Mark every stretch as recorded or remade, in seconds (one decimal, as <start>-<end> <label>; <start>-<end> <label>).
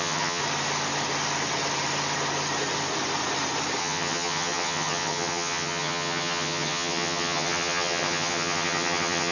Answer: 0.0-0.4 remade; 0.4-3.8 recorded; 3.8-9.3 remade